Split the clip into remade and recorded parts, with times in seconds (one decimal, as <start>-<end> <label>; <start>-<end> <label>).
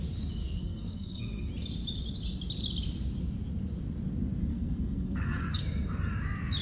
0.0-0.4 recorded; 0.4-1.5 remade; 1.5-4.5 recorded; 4.5-5.6 remade; 5.6-6.6 recorded